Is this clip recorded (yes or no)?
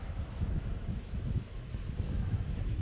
no